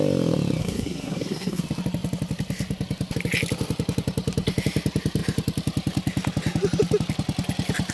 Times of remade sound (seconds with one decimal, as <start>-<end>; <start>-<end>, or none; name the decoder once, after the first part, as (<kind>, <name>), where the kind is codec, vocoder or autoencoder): 0.6-1.6 (codec, SNAC)